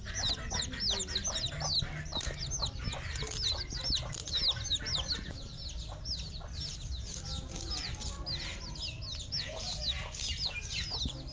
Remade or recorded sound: recorded